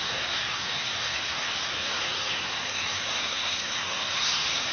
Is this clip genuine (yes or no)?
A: no